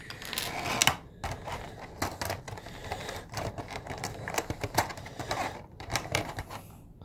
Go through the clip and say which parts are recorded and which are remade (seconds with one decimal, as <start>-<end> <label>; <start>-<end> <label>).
0.0-2.8 recorded; 2.8-6.5 remade; 6.5-7.0 recorded